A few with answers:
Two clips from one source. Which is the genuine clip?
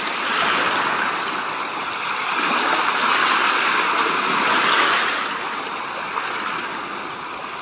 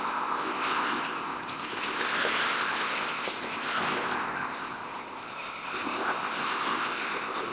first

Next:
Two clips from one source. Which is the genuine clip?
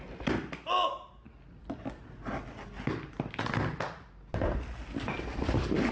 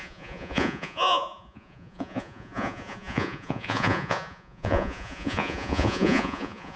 first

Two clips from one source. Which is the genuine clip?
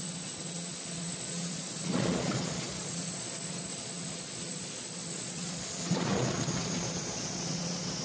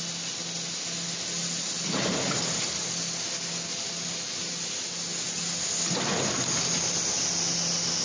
second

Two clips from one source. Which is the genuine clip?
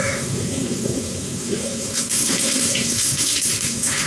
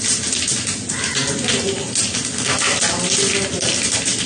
second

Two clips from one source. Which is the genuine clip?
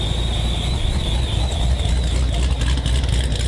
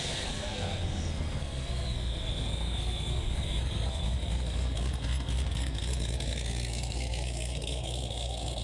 first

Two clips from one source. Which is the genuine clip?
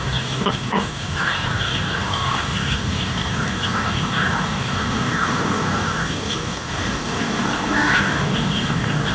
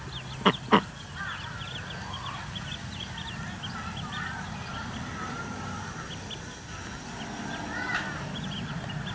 second